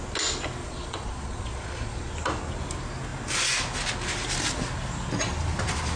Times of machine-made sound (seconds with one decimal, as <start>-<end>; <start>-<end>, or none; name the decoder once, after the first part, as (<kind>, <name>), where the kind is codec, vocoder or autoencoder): 0.6-2.1 (vocoder, Vocos)